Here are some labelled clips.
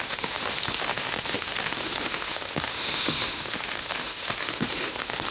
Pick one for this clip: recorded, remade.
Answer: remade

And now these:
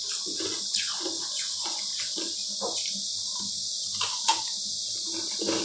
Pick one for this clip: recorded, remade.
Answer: recorded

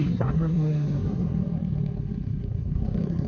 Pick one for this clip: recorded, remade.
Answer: remade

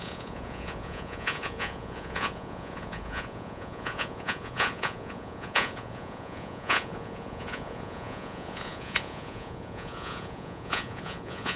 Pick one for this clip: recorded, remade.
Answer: remade